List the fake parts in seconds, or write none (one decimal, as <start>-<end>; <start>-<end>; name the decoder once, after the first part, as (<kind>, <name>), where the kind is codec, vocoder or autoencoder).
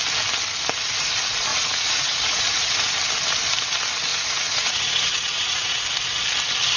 1.5-2.9 (vocoder, Vocos); 4.1-5.8